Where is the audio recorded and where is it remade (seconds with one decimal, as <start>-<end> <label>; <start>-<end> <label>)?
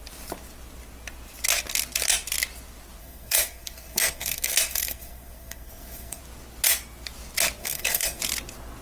0.0-3.0 recorded; 3.0-6.2 remade; 6.2-7.6 recorded; 7.6-8.2 remade; 8.2-8.8 recorded